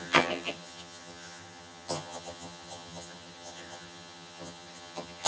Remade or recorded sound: remade